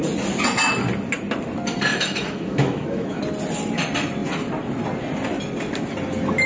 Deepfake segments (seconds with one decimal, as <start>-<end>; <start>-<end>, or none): 1.9-3.2